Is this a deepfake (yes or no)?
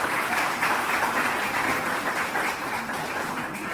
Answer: yes